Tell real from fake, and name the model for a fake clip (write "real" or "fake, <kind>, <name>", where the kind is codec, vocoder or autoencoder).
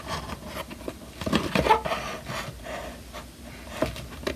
real